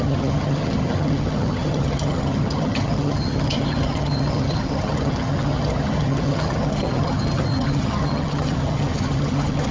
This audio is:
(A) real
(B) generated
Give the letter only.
B